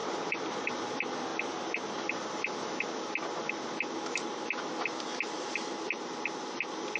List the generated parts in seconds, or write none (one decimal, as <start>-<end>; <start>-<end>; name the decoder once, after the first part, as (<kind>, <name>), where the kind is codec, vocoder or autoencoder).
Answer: 0.0-0.7 (vocoder, BigVGAN v2)